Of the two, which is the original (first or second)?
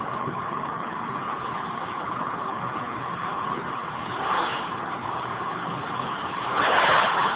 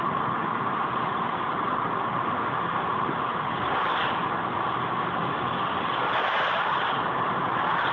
second